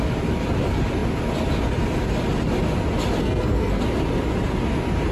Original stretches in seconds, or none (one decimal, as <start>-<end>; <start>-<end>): 0.0-3.2; 3.8-5.1